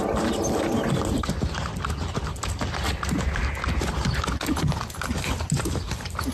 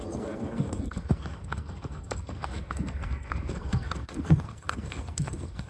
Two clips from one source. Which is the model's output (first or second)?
second